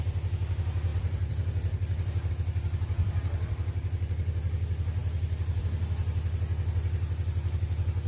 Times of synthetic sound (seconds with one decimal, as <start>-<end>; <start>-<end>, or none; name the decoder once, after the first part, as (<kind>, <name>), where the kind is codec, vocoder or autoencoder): 0.9-2.3 (vocoder, BigVGAN v2)